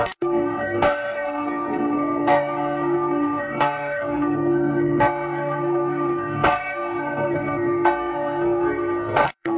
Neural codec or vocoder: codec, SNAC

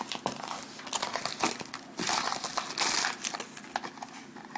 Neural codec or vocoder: none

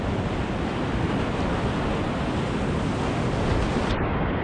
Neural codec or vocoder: none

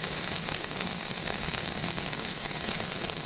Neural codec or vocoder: codec, SNAC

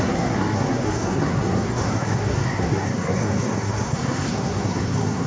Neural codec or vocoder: codec, SNAC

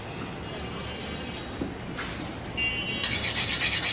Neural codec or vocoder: none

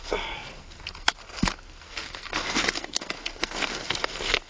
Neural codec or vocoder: codec, SNAC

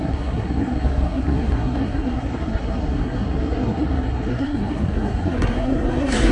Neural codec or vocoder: codec, SNAC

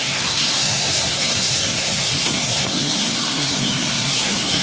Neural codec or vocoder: codec, SNAC